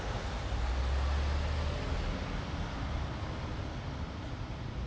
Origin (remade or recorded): recorded